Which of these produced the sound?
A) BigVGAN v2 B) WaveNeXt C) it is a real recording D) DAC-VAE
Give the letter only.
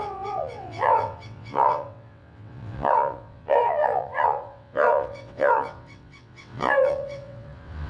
B